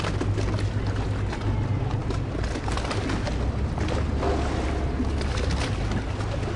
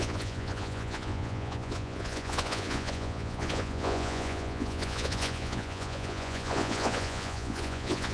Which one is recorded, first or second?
first